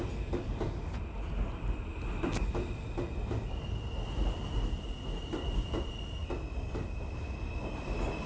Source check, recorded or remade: recorded